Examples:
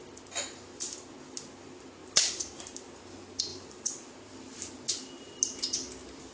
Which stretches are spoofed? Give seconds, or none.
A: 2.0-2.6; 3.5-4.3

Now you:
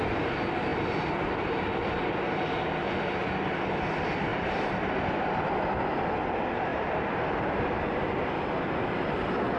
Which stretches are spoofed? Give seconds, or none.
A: 4.3-4.9; 6.7-7.9